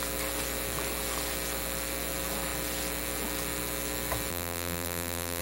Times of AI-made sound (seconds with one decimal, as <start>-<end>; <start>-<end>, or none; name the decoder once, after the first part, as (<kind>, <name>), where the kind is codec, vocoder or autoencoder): 4.3-5.4 (vocoder, BigVGAN v2)